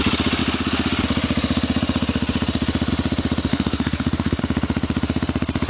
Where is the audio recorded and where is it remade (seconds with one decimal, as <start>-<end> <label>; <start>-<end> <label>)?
0.0-3.5 recorded; 3.5-4.4 remade; 4.4-5.7 recorded